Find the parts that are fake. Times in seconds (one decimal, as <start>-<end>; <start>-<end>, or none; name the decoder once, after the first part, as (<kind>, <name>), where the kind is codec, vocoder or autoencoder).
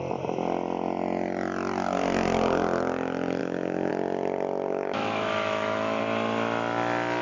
3.4-3.9 (autoencoder, DAC-VAE); 4.7-6.0